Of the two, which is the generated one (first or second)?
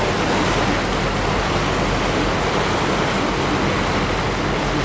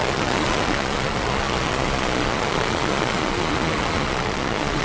second